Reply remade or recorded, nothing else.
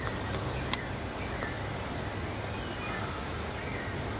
recorded